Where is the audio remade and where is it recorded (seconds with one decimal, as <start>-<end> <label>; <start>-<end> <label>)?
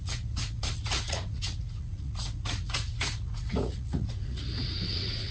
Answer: 0.0-5.3 remade